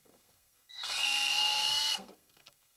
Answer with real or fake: fake